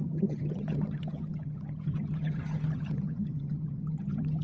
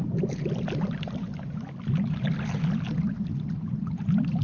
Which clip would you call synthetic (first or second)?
first